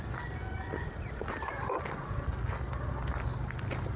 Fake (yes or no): no